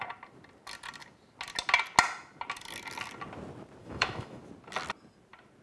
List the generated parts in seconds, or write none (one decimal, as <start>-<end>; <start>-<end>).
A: 3.8-4.4